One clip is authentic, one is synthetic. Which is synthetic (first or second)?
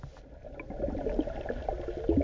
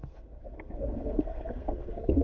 second